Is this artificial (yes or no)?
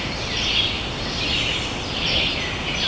no